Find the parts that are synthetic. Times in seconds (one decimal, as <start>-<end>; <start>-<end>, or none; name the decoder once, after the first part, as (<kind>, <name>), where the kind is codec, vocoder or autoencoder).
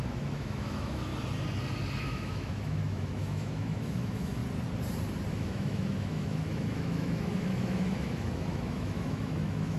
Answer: 0.0-1.1 (autoencoder, DAC-VAE); 1.9-4.4; 5.3-9.8